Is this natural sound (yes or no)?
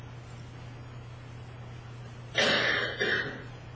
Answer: yes